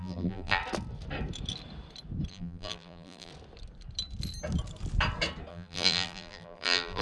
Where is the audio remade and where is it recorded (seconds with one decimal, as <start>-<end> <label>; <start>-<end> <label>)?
0.0-0.6 remade; 0.6-2.3 recorded; 2.3-3.3 remade; 3.3-5.5 recorded; 5.5-7.0 remade